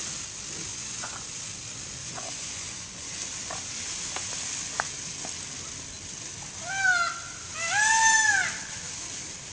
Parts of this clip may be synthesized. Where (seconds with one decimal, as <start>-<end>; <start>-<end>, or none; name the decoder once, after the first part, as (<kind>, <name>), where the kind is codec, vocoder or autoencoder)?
0.7-1.4 (vocoder, Vocos); 2.0-3.2